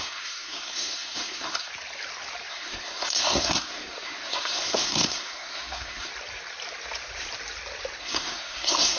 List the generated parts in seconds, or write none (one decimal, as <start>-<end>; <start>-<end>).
0.0-1.7; 2.5-6.1; 8.0-9.0